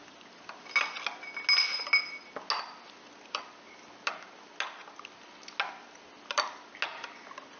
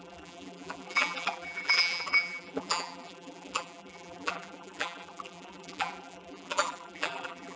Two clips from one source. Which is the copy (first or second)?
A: second